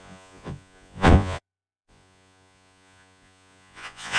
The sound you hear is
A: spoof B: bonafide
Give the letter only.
A